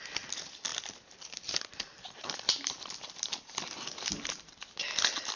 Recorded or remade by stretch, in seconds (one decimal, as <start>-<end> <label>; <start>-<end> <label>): 0.0-5.4 recorded